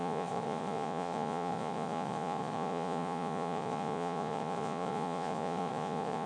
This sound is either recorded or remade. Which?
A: remade